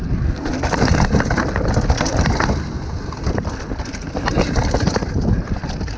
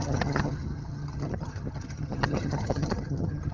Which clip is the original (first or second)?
first